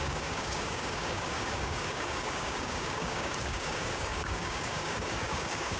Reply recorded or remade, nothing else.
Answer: remade